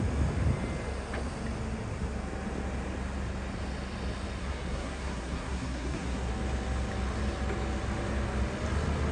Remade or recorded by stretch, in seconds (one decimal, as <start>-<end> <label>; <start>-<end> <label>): 0.0-4.4 recorded; 4.4-6.3 remade; 6.3-9.1 recorded

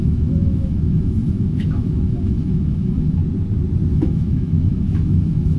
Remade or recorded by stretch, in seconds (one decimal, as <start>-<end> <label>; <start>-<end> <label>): 0.0-3.2 remade; 3.2-3.9 recorded; 3.9-5.6 remade